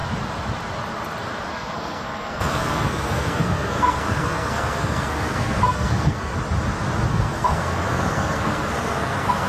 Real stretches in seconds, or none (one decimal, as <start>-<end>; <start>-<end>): 0.0-1.5; 6.3-7.1